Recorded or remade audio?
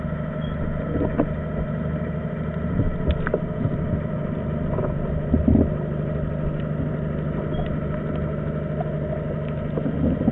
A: recorded